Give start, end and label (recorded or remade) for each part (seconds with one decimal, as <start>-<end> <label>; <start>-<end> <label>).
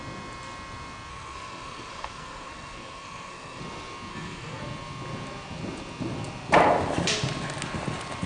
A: 0.0-1.1 recorded; 1.1-3.6 remade; 3.6-4.1 recorded; 4.1-4.6 remade; 4.6-8.3 recorded